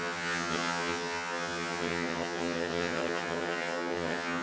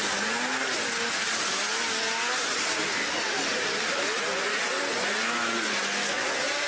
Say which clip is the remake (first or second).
first